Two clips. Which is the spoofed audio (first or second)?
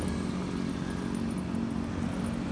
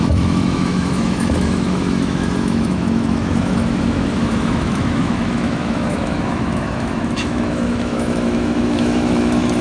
second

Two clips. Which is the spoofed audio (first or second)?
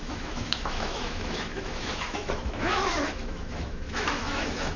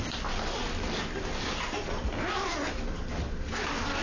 first